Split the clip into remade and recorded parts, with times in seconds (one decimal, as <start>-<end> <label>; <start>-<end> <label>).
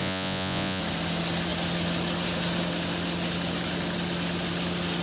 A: 0.0-0.8 remade; 0.8-5.0 recorded